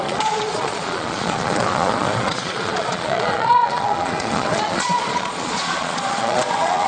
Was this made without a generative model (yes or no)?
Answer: no